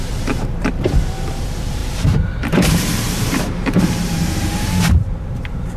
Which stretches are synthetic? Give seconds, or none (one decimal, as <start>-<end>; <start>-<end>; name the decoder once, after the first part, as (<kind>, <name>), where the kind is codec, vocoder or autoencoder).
0.0-5.8 (vocoder, BigVGAN v2)